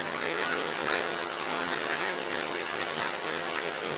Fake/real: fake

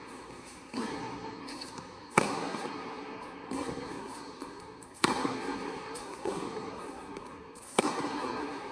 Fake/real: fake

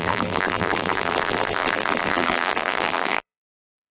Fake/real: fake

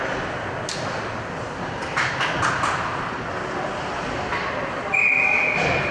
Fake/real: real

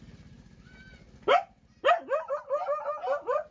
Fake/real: real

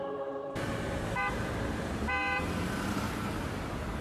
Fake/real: fake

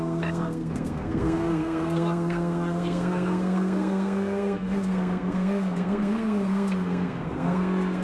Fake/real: fake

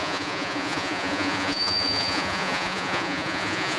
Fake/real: fake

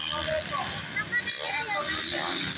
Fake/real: real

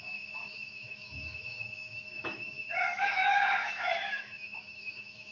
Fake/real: fake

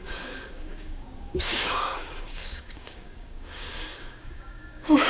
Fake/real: fake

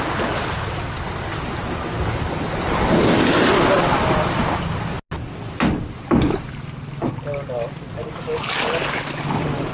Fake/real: real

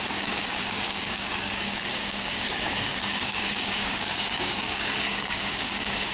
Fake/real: fake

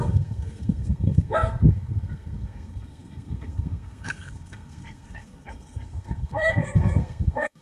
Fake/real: fake